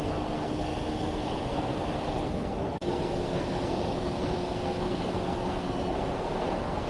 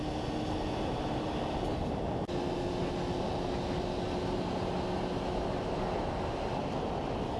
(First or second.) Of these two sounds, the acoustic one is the second